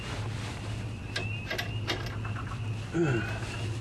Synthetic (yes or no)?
no